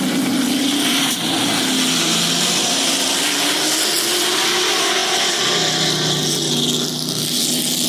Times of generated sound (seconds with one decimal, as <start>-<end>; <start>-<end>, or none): none